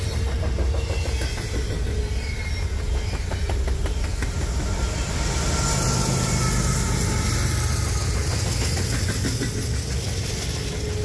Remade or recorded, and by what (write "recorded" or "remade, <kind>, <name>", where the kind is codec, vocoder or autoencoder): recorded